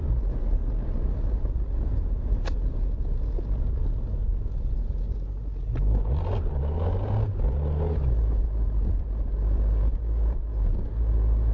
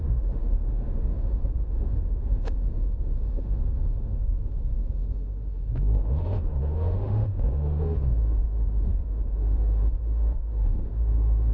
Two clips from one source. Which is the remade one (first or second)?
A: second